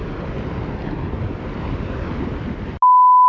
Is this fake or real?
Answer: real